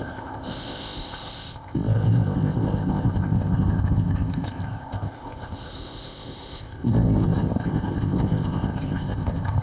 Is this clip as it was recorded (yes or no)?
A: no